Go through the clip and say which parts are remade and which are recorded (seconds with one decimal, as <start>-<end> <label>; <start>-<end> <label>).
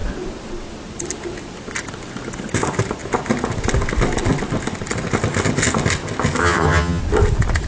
0.0-6.4 recorded; 6.4-7.0 remade; 7.0-7.7 recorded